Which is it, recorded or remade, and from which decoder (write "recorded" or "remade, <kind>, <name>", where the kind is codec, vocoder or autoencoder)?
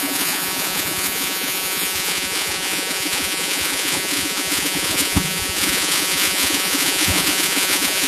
remade, vocoder, Vocos